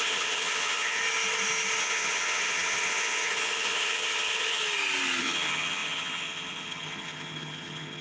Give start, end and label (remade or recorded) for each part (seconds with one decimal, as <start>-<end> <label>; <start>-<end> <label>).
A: 0.0-1.0 remade; 1.0-1.8 recorded; 1.8-4.6 remade; 4.6-5.2 recorded; 5.2-8.0 remade